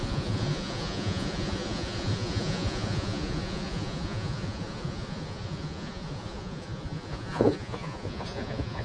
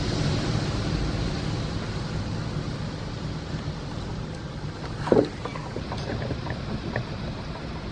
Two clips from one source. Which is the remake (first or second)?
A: first